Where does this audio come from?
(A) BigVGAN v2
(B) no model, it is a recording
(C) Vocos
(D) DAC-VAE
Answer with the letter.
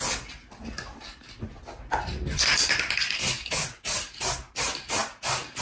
B